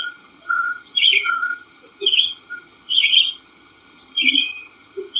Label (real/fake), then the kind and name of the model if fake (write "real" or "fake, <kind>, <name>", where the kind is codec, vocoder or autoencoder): fake, vocoder, HiFi-GAN